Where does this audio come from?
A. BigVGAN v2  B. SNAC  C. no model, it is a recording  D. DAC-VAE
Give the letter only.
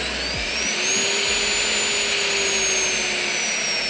C